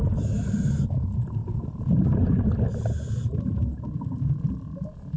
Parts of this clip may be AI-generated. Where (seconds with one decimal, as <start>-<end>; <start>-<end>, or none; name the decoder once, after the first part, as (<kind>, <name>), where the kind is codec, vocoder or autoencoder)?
none